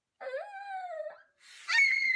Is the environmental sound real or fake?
real